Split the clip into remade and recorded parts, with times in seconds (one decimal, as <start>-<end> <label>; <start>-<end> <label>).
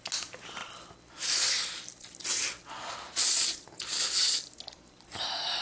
0.0-5.6 recorded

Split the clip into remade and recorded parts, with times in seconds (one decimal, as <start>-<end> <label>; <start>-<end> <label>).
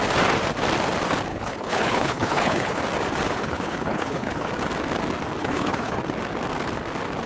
0.0-1.3 recorded; 1.3-2.8 remade; 2.8-3.3 recorded; 3.3-4.5 remade; 4.5-5.4 recorded; 5.4-6.0 remade; 6.0-7.3 recorded